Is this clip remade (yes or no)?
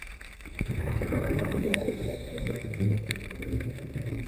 yes